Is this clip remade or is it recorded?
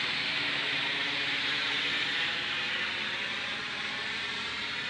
remade